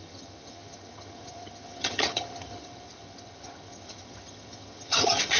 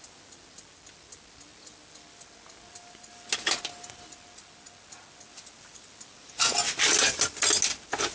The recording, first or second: second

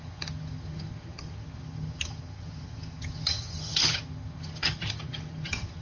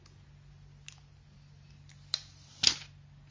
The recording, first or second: second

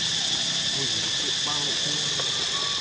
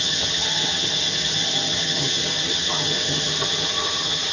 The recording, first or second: first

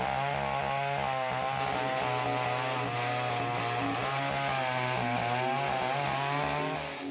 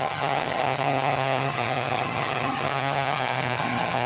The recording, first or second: first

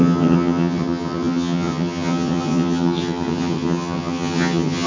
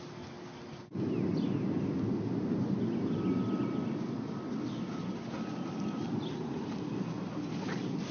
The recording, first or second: second